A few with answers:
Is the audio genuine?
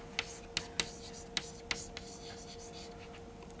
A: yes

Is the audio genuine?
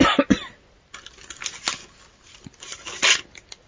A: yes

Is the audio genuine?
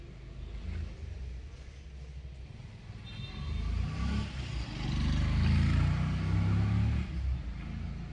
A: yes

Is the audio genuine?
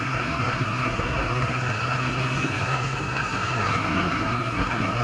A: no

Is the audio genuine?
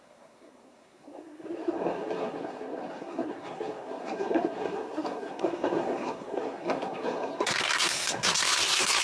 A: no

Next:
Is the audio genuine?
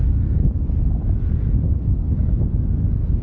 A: yes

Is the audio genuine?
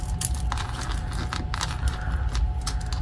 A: yes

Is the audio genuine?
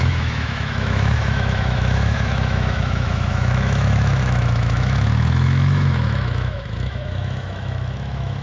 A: no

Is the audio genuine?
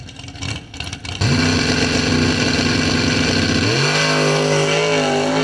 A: yes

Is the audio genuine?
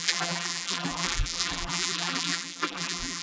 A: no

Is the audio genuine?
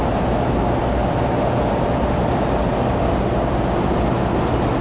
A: yes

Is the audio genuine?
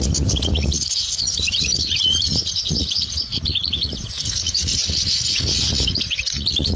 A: no